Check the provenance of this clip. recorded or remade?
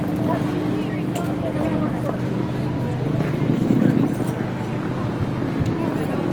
recorded